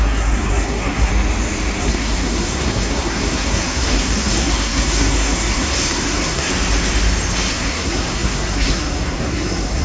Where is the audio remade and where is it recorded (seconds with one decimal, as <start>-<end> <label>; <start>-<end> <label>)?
0.0-1.1 remade; 1.1-1.8 recorded; 1.8-6.5 remade; 6.5-7.5 recorded; 7.5-9.8 remade